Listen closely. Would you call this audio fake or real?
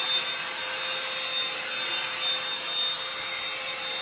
real